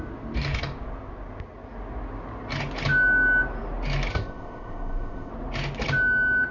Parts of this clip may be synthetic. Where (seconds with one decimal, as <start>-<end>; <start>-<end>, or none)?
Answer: 4.1-5.3